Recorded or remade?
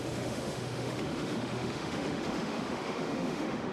remade